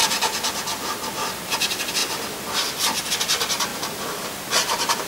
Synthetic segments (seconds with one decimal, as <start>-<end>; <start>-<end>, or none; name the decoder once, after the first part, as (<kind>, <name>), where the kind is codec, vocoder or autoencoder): 3.7-5.1 (vocoder, BigVGAN v2)